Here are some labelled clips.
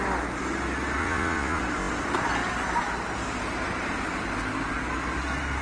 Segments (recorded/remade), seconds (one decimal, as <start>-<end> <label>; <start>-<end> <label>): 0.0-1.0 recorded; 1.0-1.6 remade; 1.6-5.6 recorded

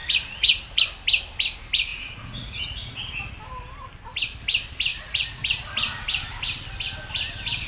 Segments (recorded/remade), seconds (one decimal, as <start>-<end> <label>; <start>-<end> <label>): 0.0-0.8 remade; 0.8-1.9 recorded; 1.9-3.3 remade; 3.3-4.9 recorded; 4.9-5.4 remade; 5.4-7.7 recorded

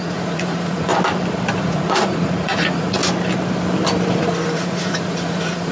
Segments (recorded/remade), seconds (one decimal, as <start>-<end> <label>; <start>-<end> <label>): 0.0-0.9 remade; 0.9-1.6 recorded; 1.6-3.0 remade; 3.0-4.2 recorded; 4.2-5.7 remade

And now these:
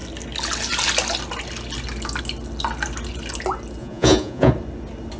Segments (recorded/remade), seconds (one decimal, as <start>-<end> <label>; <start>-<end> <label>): 0.0-3.8 recorded; 3.8-4.5 remade; 4.5-5.2 recorded

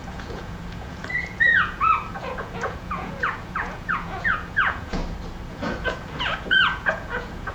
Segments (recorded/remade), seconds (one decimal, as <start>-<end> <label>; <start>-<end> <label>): 0.0-5.0 remade; 5.0-5.5 recorded; 5.5-7.5 remade

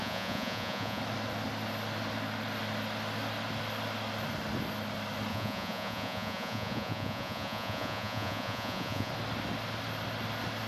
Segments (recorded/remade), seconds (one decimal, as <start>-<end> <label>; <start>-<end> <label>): 0.0-1.0 remade; 1.0-5.3 recorded; 5.3-9.1 remade; 9.1-10.7 recorded